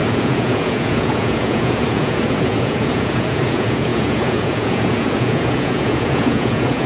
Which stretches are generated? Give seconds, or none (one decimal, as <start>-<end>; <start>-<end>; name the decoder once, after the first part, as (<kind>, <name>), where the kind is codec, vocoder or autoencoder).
0.0-6.9 (vocoder, Vocos)